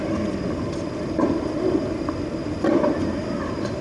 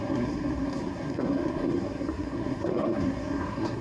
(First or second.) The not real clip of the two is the second